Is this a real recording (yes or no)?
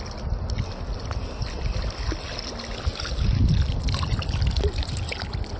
yes